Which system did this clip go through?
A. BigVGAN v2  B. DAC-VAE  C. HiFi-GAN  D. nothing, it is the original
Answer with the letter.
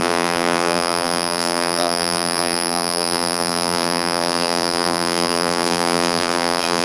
A